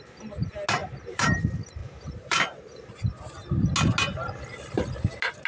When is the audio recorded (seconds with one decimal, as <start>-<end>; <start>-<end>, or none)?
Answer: 0.0-0.8; 1.4-1.8; 2.9-5.5